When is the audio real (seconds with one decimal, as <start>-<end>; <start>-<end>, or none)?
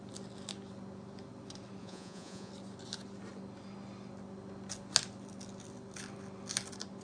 0.0-1.8; 2.5-7.0